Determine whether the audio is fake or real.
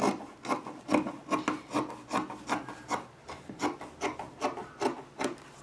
real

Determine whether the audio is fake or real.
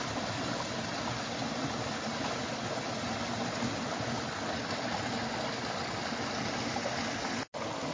real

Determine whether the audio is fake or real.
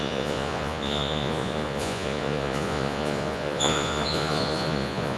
fake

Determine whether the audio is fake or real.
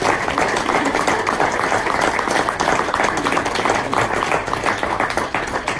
real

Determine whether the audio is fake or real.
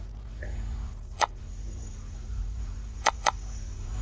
fake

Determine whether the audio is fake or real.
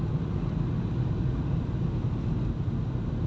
real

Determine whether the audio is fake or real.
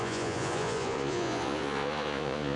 fake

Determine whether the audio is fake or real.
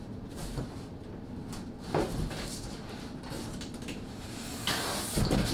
real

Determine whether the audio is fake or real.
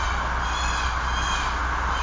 real